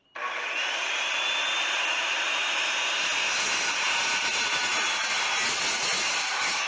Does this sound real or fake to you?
real